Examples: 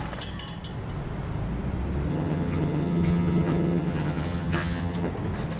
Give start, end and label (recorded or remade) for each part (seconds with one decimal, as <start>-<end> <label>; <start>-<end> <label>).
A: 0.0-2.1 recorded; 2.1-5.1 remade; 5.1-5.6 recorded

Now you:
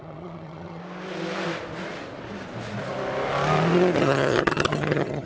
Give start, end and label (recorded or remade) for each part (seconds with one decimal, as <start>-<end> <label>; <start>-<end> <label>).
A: 0.0-0.8 remade; 0.8-4.0 recorded; 4.0-5.3 remade

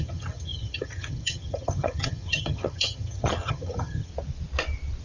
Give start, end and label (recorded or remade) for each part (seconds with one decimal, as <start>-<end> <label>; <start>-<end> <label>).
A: 0.0-4.1 remade; 4.1-5.0 recorded

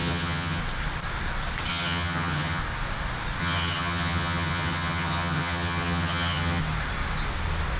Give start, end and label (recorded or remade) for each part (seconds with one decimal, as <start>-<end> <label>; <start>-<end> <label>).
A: 0.0-0.6 remade; 0.6-1.7 recorded; 1.7-2.6 remade; 2.6-3.4 recorded; 3.4-6.6 remade; 6.6-7.8 recorded

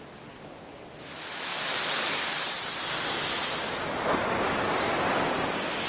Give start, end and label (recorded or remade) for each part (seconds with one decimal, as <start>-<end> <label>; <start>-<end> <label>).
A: 0.0-5.9 recorded

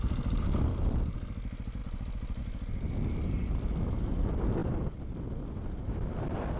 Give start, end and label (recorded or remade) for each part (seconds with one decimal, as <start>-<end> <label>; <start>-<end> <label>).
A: 0.0-6.6 recorded

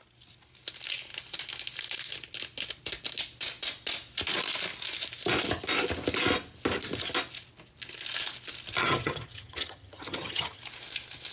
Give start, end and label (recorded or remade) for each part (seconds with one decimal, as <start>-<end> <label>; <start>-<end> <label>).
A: 0.0-8.8 recorded; 8.8-10.6 remade; 10.6-11.3 recorded

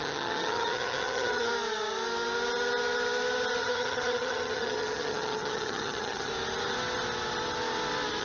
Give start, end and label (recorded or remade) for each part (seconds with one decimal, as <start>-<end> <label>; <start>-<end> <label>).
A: 0.0-1.5 remade; 1.5-3.6 recorded; 3.6-6.3 remade; 6.3-8.2 recorded